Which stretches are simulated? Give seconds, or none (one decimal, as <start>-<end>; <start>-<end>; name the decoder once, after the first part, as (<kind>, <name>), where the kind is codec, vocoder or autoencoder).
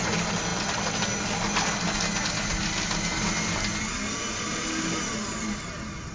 none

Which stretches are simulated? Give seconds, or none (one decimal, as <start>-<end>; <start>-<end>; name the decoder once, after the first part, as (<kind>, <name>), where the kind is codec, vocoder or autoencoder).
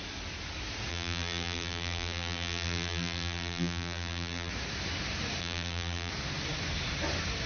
0.9-4.5 (vocoder, BigVGAN v2); 5.4-6.1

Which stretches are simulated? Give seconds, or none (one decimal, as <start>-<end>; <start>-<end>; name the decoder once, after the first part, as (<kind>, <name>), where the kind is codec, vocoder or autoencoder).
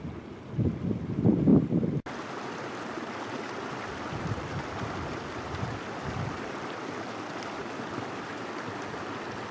none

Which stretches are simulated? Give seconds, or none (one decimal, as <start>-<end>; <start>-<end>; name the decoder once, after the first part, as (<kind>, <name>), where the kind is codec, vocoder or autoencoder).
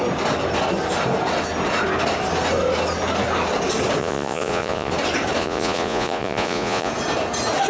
4.0-4.9 (vocoder, Vocos); 5.4-6.9